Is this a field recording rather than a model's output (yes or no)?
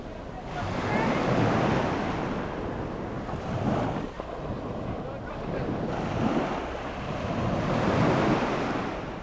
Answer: yes